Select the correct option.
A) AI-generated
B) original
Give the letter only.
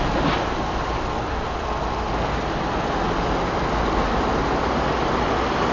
B